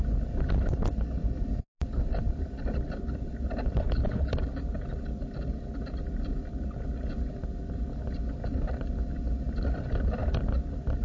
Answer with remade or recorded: recorded